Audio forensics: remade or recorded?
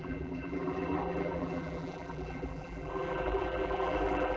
remade